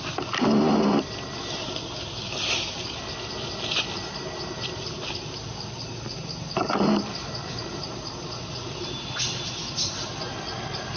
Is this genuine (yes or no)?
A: yes